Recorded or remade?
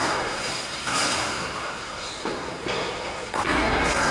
remade